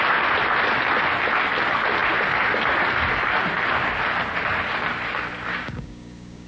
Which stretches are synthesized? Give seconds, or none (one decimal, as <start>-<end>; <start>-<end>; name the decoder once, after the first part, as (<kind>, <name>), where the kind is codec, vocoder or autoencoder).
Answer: 5.5-6.5 (codec, DAC)